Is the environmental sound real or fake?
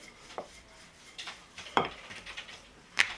fake